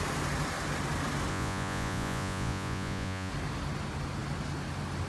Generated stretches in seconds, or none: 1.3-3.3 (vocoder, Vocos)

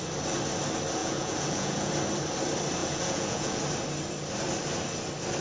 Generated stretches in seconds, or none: 1.0-1.9 (vocoder, Vocos); 2.8-3.6